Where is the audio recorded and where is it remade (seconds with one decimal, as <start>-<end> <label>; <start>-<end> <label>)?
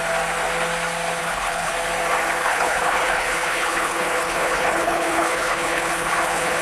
0.0-1.2 recorded; 1.2-1.7 remade; 1.7-2.4 recorded; 2.4-6.6 remade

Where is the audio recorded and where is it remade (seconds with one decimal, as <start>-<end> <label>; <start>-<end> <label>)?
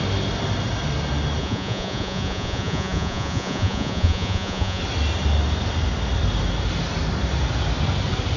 0.0-1.4 recorded; 1.4-4.8 remade; 4.8-8.4 recorded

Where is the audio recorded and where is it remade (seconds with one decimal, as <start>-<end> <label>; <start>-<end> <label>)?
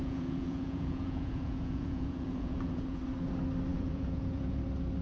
0.0-3.0 remade; 3.0-3.7 recorded; 3.7-4.6 remade; 4.6-5.0 recorded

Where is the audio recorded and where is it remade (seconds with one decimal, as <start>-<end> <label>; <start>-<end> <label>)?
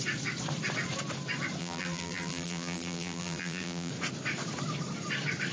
0.0-1.6 recorded; 1.6-3.9 remade; 3.9-5.5 recorded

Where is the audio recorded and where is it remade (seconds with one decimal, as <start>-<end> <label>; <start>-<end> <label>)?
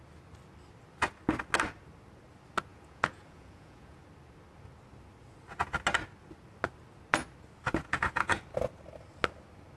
0.0-2.7 recorded; 2.7-4.0 remade; 4.0-7.8 recorded; 7.8-8.4 remade; 8.4-9.8 recorded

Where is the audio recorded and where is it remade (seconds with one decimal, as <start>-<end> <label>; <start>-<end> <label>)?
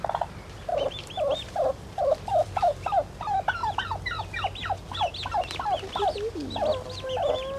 0.0-0.7 recorded; 0.7-1.5 remade; 1.5-7.6 recorded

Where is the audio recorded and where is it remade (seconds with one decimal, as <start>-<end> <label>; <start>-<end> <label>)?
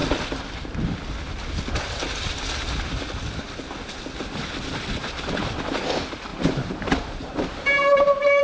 0.0-6.3 recorded; 6.3-8.4 remade